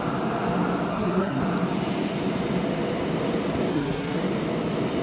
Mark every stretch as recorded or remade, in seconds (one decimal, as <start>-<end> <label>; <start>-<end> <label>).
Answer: 0.0-0.9 recorded; 0.9-1.4 remade; 1.4-3.7 recorded; 3.7-4.2 remade; 4.2-5.0 recorded

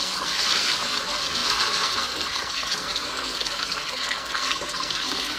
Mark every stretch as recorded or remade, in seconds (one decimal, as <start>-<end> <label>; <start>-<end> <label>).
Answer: 0.0-5.4 remade